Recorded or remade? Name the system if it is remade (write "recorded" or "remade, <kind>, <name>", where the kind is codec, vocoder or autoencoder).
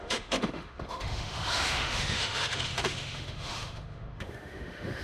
remade, autoencoder, DAC-VAE